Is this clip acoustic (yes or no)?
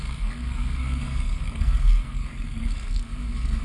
no